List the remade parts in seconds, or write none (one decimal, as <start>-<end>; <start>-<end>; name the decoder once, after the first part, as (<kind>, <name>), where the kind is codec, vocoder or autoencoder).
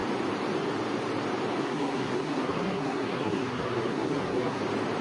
1.6-4.6 (codec, SNAC)